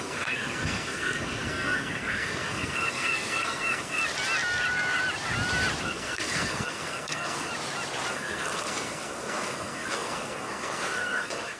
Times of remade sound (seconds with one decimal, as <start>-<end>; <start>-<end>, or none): 0.0-4.0; 5.8-7.5; 8.1-11.6